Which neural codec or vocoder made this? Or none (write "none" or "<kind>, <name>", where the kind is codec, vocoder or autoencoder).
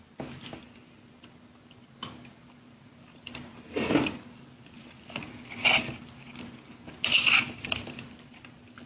none